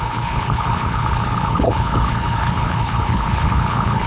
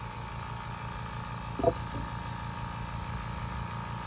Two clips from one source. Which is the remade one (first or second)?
first